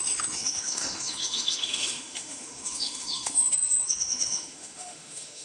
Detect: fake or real fake